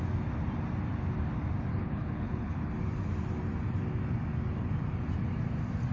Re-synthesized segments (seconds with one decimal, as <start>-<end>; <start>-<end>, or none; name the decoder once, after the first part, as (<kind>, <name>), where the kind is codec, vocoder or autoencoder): 1.7-2.7 (codec, HILCodec)